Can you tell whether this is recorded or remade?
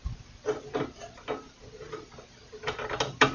recorded